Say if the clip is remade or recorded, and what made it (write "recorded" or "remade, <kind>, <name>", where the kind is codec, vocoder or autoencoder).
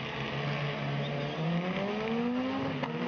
recorded